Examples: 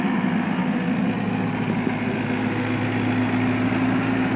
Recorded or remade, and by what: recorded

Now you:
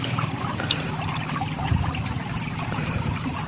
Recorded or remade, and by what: remade, vocoder, BigVGAN v2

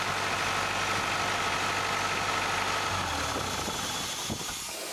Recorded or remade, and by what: recorded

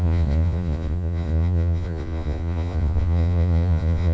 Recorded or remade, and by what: remade, vocoder, Vocos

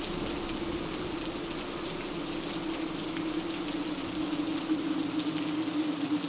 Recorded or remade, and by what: recorded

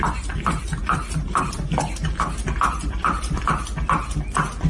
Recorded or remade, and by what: recorded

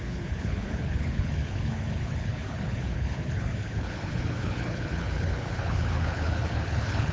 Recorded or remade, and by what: remade, codec, HILCodec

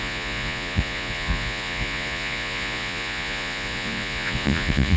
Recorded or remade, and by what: remade, vocoder, Vocos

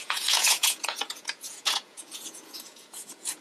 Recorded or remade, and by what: remade, vocoder, Vocos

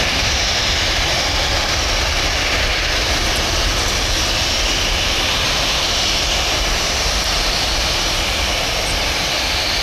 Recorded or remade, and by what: remade, vocoder, BigVGAN v2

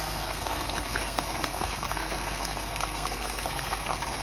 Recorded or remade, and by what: remade, codec, SNAC